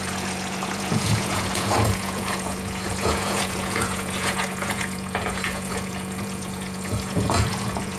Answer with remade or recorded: remade